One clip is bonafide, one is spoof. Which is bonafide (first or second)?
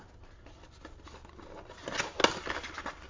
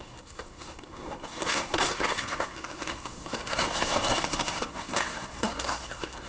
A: first